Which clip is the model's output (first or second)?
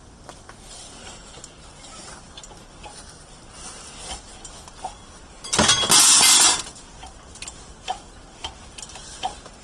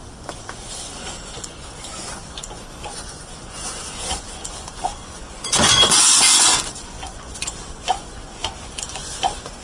second